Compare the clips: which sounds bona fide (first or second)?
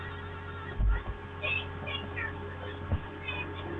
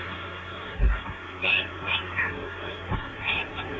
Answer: first